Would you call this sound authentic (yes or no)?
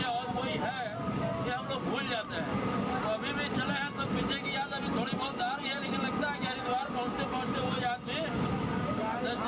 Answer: yes